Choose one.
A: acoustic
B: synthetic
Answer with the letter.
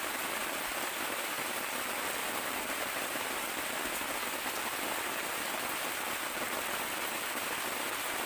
A